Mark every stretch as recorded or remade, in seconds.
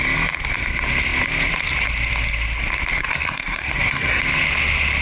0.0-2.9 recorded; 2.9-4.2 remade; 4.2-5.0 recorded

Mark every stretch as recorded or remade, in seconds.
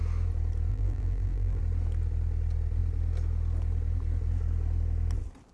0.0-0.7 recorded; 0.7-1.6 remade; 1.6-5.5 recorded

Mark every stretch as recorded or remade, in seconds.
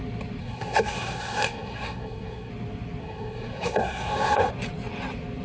0.0-0.4 recorded; 0.4-2.5 remade; 2.5-3.0 recorded; 3.0-4.5 remade; 4.5-5.4 recorded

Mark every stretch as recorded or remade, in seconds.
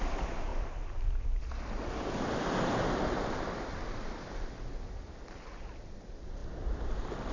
0.0-7.3 recorded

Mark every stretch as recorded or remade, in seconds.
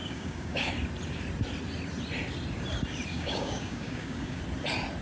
0.0-0.7 remade; 0.7-3.1 recorded; 3.1-4.4 remade; 4.4-5.0 recorded